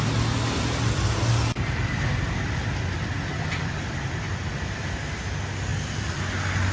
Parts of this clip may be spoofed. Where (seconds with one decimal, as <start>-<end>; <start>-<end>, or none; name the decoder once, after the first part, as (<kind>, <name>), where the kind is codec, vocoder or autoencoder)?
5.7-6.7 (vocoder, BigVGAN v2)